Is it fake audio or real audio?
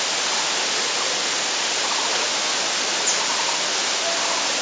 real